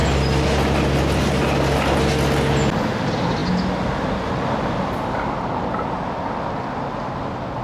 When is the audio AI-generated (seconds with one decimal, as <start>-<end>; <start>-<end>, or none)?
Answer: none